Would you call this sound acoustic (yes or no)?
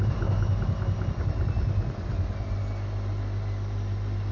yes